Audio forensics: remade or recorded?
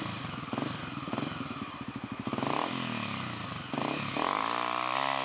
remade